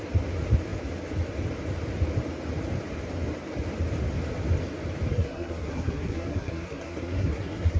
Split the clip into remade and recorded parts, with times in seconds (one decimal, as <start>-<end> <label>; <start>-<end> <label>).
0.0-5.1 recorded; 5.1-7.8 remade